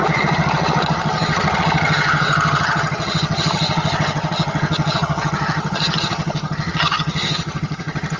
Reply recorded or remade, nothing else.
remade